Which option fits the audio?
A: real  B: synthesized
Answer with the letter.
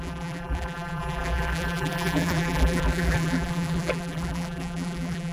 B